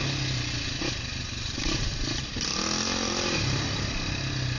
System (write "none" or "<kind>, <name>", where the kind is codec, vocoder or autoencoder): none